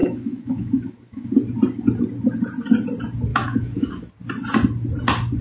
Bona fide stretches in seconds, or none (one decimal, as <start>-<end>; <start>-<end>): 1.3-3.3; 4.1-5.4